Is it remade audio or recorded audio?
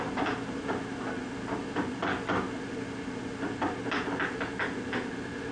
recorded